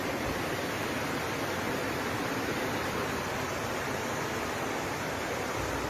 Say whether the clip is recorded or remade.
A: recorded